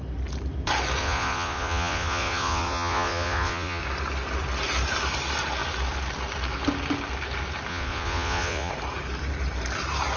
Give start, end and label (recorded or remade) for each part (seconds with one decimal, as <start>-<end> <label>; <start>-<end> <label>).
0.0-1.0 recorded; 1.0-3.8 remade; 3.8-7.7 recorded; 7.7-8.7 remade; 8.7-10.2 recorded

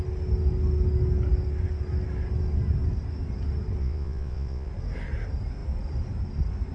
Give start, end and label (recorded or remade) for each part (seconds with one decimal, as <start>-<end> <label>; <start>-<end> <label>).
0.0-3.8 recorded; 3.8-4.7 remade; 4.7-6.7 recorded

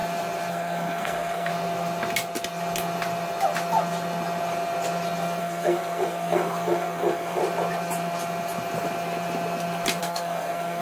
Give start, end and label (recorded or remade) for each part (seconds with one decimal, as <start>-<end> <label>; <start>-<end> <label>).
0.0-0.5 recorded; 0.5-1.5 remade; 1.5-5.4 recorded; 5.4-7.4 remade; 7.4-10.0 recorded; 10.0-10.8 remade